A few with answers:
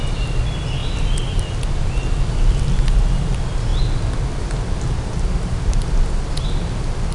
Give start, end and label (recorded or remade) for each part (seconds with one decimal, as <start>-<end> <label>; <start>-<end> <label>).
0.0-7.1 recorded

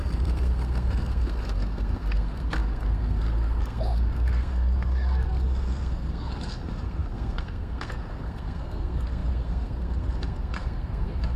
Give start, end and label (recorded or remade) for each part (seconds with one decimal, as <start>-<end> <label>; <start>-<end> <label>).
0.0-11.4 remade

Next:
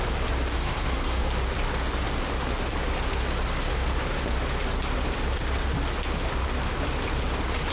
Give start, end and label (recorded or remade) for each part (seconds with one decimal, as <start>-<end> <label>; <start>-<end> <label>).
0.0-0.6 recorded; 0.6-1.3 remade; 1.3-7.7 recorded

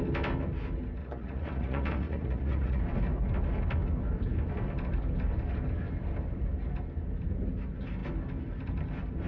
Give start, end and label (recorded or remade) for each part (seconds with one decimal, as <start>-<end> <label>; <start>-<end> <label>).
0.0-1.0 recorded; 1.0-2.8 remade; 2.8-9.3 recorded